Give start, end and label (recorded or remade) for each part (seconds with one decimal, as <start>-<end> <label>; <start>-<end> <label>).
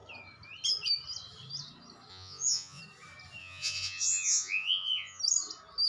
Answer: 0.0-2.1 recorded; 2.1-2.8 remade; 2.8-3.4 recorded; 3.4-5.2 remade; 5.2-5.9 recorded